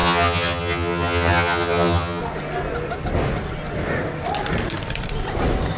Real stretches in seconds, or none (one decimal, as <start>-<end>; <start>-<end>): 2.2-5.8